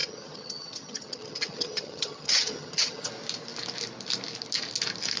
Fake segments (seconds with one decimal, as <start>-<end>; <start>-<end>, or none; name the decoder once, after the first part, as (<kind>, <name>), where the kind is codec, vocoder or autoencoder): 0.0-3.1 (vocoder, HiFi-GAN)